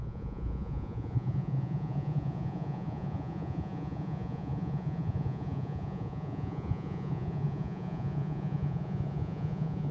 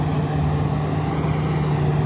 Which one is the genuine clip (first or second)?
second